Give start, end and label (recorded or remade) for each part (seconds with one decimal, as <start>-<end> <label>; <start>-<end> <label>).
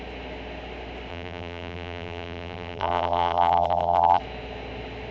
0.0-1.1 recorded; 1.1-4.2 remade; 4.2-5.1 recorded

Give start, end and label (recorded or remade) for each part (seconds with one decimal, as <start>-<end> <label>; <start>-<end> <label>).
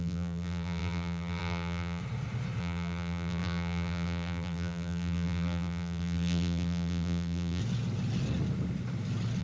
0.0-2.0 remade; 2.0-2.6 recorded; 2.6-7.6 remade; 7.6-9.4 recorded